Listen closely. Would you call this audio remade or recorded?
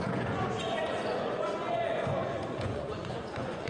remade